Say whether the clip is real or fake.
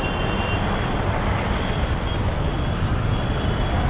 real